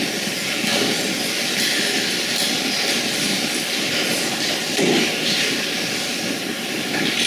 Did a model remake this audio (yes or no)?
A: no